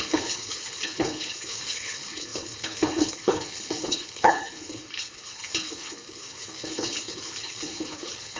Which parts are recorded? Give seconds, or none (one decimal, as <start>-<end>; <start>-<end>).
none